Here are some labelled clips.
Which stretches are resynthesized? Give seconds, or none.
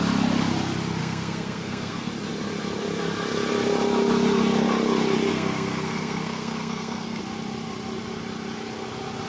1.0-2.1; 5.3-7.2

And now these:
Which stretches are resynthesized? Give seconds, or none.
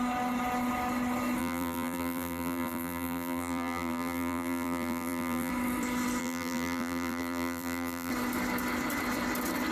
1.4-5.5; 6.2-8.1